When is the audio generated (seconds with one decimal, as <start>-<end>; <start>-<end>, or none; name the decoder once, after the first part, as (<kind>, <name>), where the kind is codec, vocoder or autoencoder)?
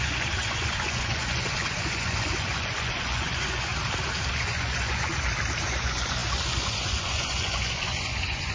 0.0-3.7 (vocoder, Vocos); 4.3-5.1; 5.6-8.5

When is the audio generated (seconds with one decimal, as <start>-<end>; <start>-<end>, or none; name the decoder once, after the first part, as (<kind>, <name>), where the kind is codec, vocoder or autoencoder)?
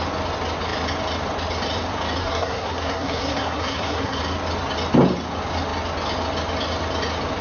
2.2-4.2 (codec, SNAC)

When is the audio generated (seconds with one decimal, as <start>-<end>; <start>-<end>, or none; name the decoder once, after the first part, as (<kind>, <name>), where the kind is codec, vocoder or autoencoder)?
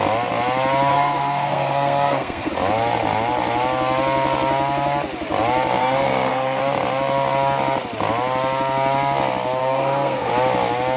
0.9-2.5 (codec, SNAC); 5.8-6.6; 9.6-10.3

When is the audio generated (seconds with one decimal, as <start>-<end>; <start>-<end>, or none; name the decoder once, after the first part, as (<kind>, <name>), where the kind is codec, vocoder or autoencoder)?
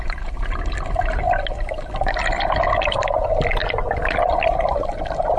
0.0-1.2 (vocoder, BigVGAN v2); 2.2-5.4